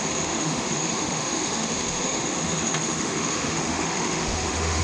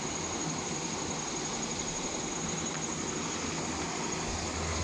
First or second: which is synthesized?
first